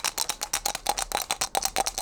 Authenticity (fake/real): real